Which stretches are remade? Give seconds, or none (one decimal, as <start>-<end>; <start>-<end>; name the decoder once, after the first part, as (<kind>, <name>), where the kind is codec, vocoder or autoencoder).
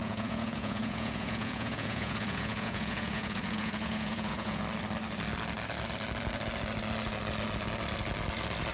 0.0-4.6 (vocoder, Vocos)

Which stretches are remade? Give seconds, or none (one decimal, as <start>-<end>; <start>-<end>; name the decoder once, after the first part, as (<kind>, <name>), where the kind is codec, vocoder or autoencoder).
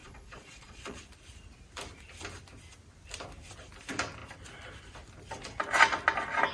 0.0-1.0 (vocoder, Vocos)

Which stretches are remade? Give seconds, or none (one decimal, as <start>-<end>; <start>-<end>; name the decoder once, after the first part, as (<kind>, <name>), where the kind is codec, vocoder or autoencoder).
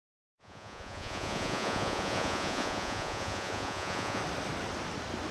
0.0-4.2 (vocoder, Vocos)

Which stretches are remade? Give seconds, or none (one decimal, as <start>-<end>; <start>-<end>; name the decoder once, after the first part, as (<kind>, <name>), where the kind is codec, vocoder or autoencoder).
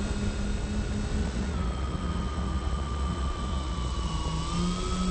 1.2-4.1 (vocoder, Vocos)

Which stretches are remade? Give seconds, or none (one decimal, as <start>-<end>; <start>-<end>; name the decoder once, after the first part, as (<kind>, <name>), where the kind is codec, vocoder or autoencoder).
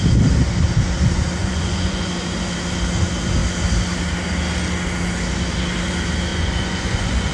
1.4-2.1 (vocoder, Vocos); 6.3-7.3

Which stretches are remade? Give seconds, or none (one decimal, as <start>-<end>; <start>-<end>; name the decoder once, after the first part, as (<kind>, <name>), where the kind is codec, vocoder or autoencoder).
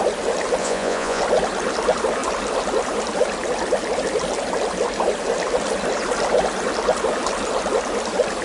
0.6-1.2 (vocoder, Vocos)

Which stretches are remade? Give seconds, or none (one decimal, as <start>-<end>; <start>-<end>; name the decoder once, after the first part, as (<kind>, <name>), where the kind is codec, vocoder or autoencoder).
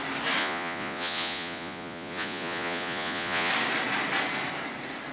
0.4-3.5 (vocoder, Vocos)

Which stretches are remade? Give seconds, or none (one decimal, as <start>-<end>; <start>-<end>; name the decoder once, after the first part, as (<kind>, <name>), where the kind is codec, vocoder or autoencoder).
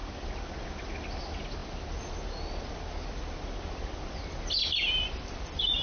none